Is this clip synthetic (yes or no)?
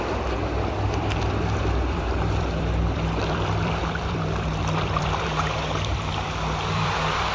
yes